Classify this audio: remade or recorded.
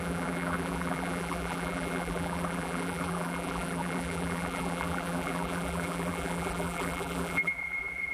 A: remade